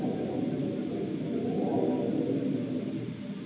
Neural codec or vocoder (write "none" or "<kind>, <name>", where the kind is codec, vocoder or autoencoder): none